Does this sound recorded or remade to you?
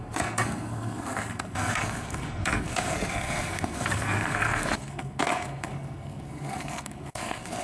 remade